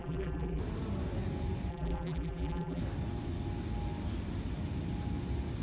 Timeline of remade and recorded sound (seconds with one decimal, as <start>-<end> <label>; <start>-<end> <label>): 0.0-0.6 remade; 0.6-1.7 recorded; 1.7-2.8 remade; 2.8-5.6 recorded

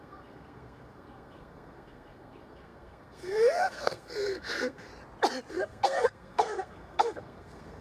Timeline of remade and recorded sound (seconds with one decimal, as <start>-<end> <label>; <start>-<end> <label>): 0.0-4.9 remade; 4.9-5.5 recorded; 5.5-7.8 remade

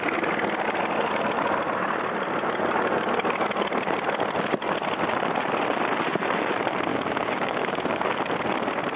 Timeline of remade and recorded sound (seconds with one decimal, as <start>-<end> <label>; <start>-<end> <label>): 0.0-6.9 recorded; 6.9-8.2 remade; 8.2-9.0 recorded

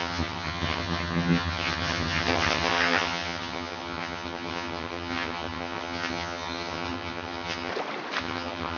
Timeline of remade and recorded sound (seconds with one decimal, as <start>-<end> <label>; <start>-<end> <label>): 0.0-7.7 remade; 7.7-8.2 recorded; 8.2-8.8 remade